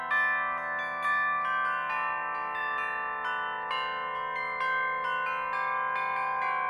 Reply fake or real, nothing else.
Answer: real